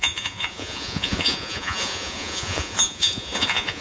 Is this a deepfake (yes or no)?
yes